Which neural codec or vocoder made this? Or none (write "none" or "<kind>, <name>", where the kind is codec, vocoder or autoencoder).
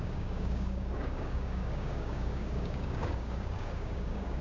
codec, DAC